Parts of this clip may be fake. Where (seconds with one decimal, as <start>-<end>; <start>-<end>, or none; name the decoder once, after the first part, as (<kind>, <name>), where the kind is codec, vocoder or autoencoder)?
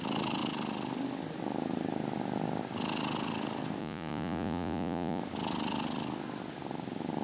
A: 3.8-5.2 (vocoder, Vocos)